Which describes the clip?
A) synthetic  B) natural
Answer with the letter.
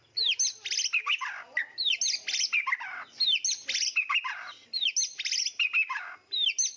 B